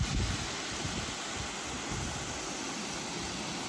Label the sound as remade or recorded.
recorded